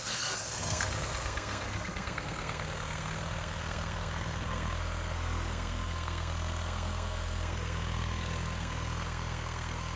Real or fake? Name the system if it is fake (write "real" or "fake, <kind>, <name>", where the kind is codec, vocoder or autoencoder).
fake, codec, SNAC